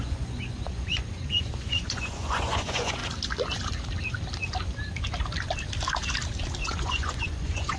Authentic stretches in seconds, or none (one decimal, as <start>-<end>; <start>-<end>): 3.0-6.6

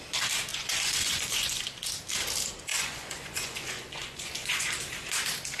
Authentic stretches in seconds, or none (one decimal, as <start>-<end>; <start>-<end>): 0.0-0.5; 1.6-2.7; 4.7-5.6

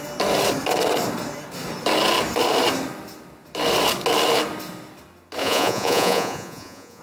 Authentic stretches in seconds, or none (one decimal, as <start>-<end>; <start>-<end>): 0.0-5.4

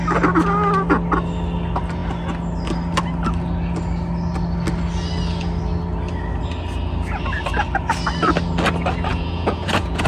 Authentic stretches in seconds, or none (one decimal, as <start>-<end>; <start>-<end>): 0.0-9.1

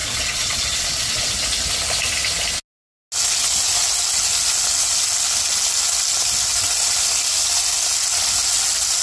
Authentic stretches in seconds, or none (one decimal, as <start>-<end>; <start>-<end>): 1.3-9.0

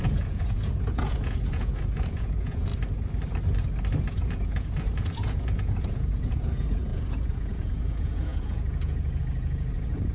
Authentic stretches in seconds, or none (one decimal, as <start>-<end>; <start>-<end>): 2.7-4.1

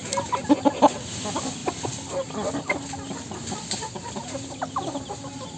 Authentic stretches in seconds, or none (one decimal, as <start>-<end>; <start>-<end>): 0.0-5.6

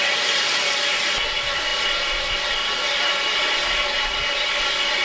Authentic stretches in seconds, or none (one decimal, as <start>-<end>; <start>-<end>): 0.0-5.0